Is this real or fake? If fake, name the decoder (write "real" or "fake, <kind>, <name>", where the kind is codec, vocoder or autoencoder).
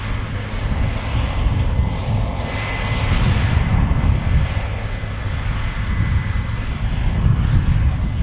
real